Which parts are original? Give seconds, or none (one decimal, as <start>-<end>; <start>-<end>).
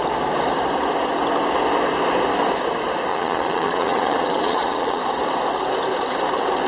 0.0-3.1; 5.0-6.7